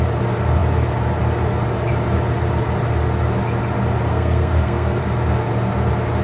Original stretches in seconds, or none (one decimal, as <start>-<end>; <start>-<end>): 0.0-4.1; 5.0-6.2